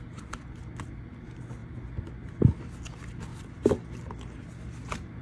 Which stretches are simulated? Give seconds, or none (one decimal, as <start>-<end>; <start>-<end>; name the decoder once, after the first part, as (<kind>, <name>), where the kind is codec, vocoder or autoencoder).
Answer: none